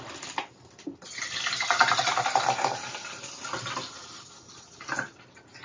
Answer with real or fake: real